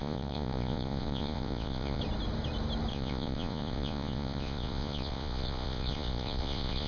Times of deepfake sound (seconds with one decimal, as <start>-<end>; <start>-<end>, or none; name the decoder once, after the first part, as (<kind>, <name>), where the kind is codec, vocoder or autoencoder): 0.0-2.0 (vocoder, Vocos); 2.9-6.9